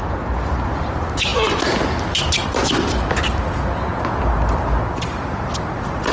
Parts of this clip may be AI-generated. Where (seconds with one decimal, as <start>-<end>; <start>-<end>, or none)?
none